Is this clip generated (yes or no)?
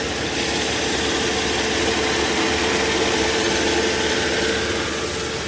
no